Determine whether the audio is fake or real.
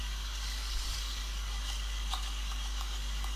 fake